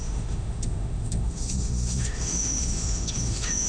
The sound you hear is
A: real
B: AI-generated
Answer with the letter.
B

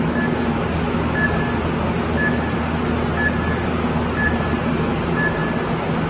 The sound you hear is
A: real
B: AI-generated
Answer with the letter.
A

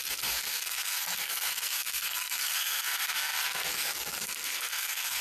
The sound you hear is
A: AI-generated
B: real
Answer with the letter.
A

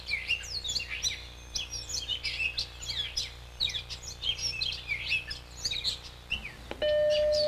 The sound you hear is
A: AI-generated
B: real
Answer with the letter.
B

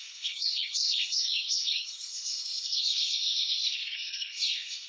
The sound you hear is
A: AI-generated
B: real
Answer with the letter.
A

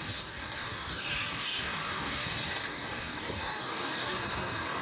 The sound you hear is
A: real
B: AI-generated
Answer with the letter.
B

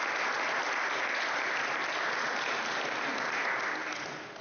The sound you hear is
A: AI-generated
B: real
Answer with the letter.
B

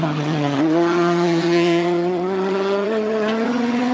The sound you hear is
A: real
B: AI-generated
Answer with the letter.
B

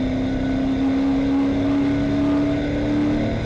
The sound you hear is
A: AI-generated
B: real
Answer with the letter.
B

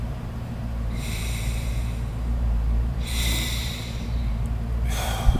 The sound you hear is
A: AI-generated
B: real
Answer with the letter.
A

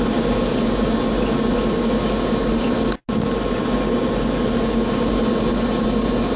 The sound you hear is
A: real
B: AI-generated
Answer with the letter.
A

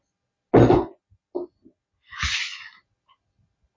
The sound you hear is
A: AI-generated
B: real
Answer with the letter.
B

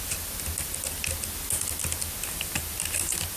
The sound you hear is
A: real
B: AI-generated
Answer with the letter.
A